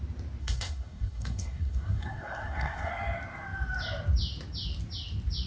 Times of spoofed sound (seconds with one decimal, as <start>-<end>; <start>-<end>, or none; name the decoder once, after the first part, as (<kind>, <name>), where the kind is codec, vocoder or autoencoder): 0.4-2.9 (codec, SNAC)